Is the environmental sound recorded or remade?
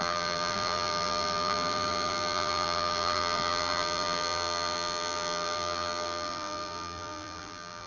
remade